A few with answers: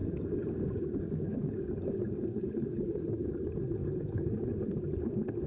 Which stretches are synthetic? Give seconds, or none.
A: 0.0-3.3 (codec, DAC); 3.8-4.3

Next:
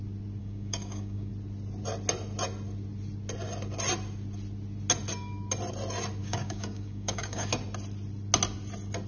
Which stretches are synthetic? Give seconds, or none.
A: 0.4-1.3 (codec, DAC); 6.2-7.5

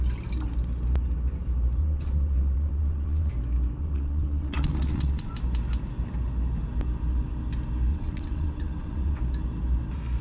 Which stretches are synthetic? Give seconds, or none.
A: 1.8-3.3 (vocoder, WaveNeXt); 3.8-5.3; 7.9-9.2

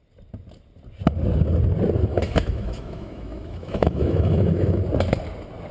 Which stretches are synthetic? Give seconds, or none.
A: 2.1-4.8 (autoencoder, DAC-VAE)

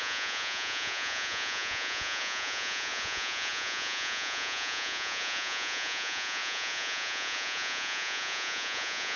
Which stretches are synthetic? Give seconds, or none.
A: 0.0-9.2 (vocoder, Vocos)